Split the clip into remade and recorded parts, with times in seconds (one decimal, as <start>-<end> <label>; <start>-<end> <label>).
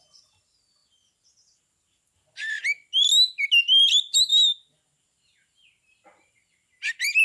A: 0.0-7.2 recorded